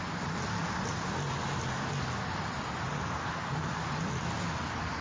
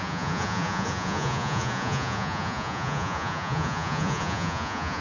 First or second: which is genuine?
first